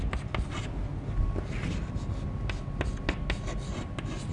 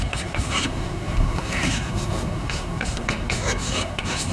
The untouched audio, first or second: first